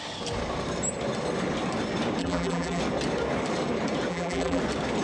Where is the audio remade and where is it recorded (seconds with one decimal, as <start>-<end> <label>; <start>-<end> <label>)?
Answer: 0.0-2.2 recorded; 2.2-2.8 remade; 2.8-4.1 recorded; 4.1-4.6 remade; 4.6-5.0 recorded